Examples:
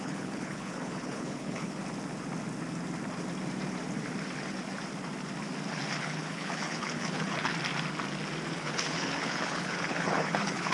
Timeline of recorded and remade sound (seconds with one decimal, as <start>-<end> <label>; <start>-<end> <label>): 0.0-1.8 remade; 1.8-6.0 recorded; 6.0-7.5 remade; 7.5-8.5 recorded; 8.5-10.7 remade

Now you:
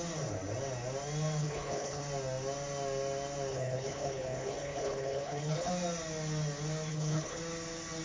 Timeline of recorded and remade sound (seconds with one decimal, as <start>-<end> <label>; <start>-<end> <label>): 0.0-1.4 recorded; 1.4-2.0 remade; 2.0-3.5 recorded; 3.5-5.7 remade; 5.7-6.9 recorded; 6.9-7.4 remade; 7.4-8.0 recorded

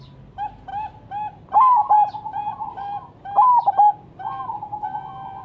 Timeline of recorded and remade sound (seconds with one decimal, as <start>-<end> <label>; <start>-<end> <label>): 0.0-5.4 recorded